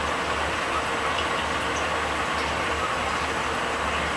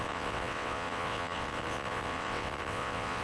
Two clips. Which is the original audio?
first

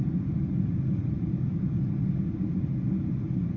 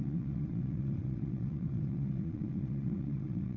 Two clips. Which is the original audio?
first